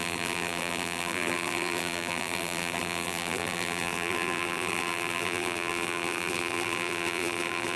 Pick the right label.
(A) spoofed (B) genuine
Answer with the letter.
A